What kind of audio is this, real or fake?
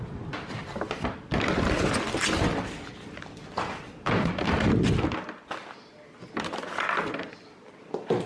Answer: real